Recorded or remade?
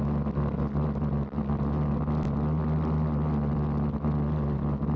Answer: recorded